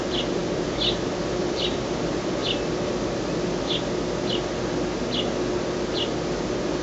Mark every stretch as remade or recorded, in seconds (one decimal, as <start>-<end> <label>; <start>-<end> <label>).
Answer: 0.0-2.4 remade; 2.4-6.8 recorded